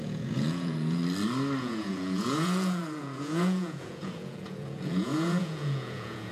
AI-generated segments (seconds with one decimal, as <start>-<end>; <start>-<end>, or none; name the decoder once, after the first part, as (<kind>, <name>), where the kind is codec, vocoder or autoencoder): 0.0-1.0 (vocoder, Vocos); 1.6-6.3